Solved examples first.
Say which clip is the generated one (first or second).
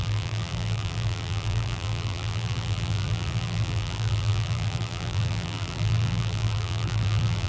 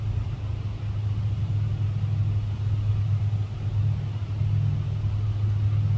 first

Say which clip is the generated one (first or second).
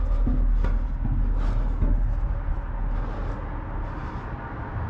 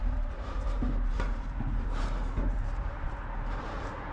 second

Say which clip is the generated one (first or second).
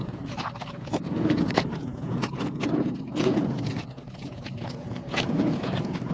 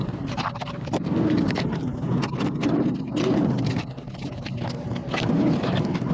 first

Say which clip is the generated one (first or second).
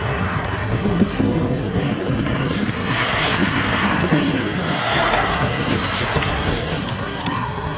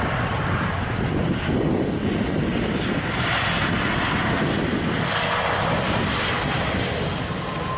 first